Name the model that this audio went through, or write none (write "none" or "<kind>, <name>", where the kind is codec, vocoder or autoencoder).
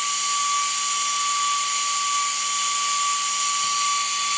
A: none